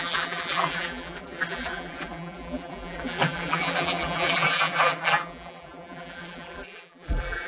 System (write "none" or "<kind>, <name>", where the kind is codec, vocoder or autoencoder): vocoder, BigVGAN v2